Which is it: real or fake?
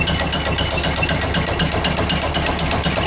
real